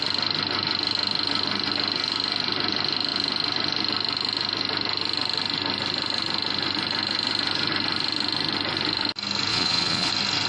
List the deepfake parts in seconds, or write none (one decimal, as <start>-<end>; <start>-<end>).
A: 9.5-10.1